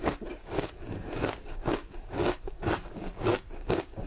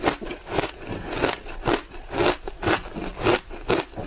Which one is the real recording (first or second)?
second